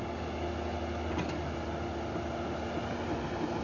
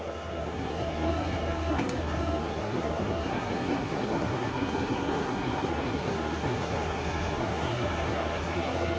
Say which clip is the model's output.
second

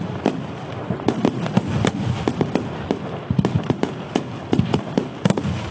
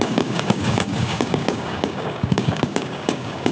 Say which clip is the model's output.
second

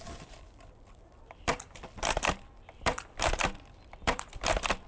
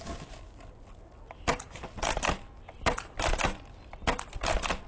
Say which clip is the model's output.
first